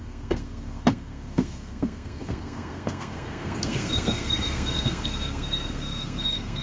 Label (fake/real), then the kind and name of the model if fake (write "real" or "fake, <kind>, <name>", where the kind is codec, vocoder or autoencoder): fake, codec, SNAC